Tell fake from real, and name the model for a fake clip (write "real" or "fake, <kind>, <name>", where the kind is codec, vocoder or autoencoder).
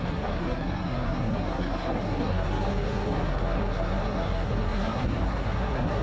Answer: fake, codec, SNAC